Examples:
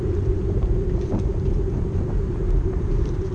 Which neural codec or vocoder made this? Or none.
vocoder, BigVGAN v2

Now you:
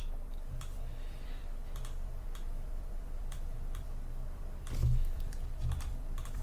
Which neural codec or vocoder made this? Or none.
vocoder, BigVGAN v2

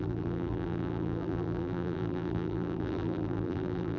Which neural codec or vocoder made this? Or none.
vocoder, BigVGAN v2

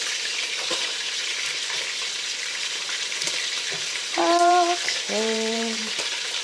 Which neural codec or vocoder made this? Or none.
vocoder, BigVGAN v2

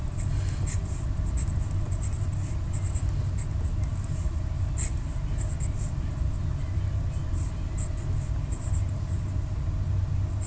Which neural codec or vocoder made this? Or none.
none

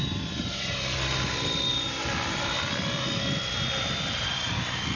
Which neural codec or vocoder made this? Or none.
vocoder, BigVGAN v2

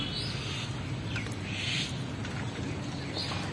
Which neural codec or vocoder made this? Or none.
none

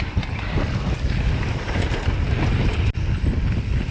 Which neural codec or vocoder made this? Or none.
none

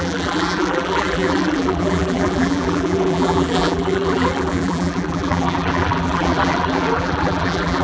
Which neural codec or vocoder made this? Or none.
vocoder, BigVGAN v2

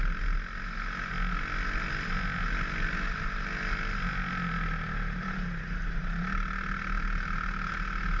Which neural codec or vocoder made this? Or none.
none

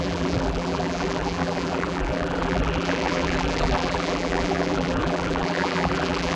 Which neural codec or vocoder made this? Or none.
vocoder, BigVGAN v2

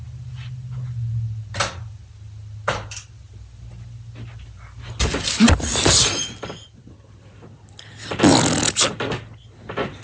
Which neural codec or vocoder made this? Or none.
none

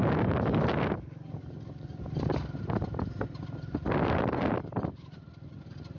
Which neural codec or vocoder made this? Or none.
none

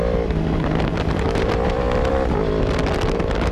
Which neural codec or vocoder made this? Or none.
vocoder, BigVGAN v2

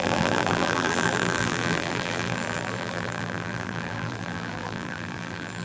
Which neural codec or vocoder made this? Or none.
vocoder, BigVGAN v2